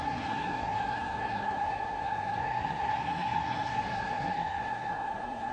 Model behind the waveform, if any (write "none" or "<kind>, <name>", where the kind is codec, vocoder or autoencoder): codec, SNAC